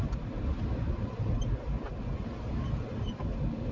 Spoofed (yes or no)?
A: no